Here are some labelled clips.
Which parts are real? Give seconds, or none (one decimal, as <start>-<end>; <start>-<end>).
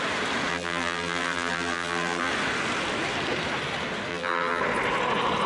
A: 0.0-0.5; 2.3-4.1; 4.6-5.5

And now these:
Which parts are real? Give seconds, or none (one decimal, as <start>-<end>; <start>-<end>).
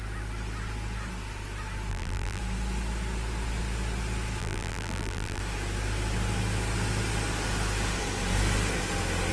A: 0.0-1.9; 2.4-4.4; 5.4-9.3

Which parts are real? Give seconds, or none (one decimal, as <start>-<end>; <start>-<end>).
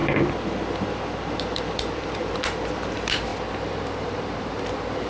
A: 0.0-1.4